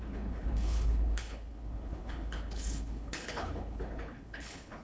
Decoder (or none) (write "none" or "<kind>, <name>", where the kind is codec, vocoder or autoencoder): codec, HILCodec